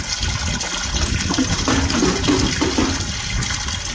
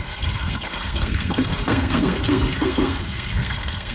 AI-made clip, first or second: second